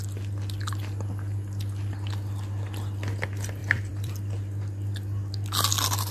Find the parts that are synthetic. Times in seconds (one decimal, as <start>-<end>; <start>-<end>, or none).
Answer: 3.6-4.2